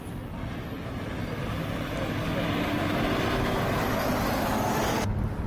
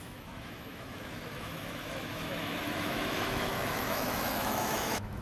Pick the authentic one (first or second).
first